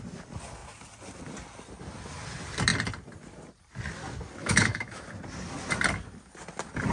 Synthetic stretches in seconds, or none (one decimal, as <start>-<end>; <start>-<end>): 4.4-5.1